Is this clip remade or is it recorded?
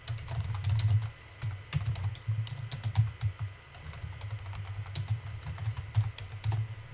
recorded